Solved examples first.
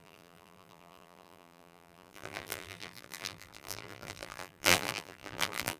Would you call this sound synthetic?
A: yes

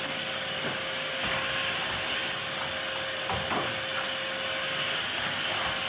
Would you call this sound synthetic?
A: no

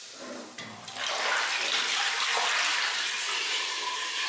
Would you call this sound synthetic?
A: no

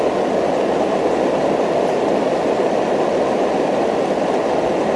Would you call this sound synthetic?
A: no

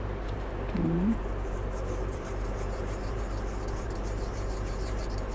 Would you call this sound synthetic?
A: yes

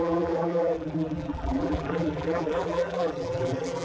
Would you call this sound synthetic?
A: yes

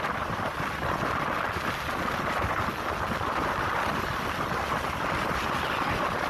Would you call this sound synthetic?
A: no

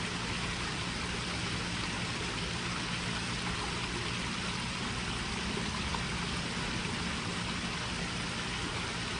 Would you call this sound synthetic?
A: no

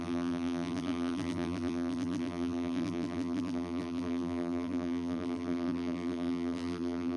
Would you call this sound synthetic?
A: yes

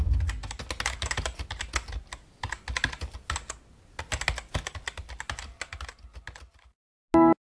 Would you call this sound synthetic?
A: no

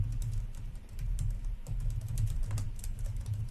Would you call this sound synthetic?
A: yes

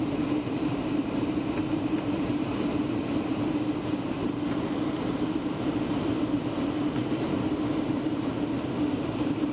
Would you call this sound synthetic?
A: yes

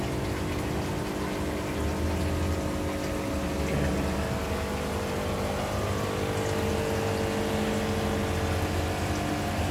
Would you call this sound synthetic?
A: no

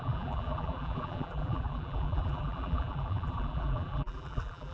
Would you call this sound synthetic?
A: yes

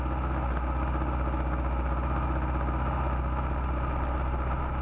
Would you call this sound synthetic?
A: no